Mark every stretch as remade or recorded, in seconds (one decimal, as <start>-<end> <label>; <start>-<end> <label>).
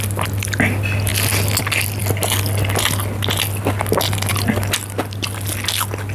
0.0-6.1 recorded